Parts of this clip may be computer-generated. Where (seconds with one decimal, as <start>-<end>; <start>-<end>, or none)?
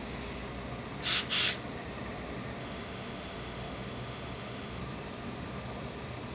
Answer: 2.6-4.8